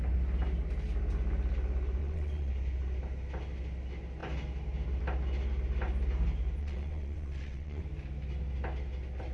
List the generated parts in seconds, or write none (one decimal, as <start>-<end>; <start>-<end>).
2.0-2.5; 6.6-7.8